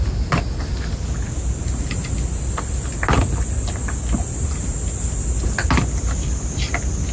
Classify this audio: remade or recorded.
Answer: recorded